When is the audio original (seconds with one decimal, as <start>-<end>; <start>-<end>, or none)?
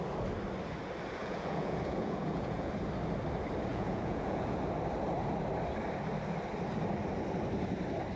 0.0-1.2; 2.7-3.7; 4.6-8.2